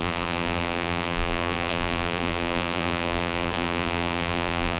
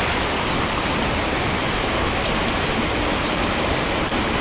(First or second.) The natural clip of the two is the second